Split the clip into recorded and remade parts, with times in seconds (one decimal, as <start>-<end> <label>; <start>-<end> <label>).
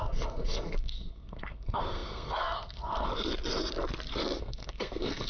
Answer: 0.0-3.1 remade; 3.1-4.4 recorded; 4.4-5.3 remade